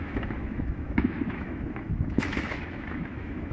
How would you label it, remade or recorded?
remade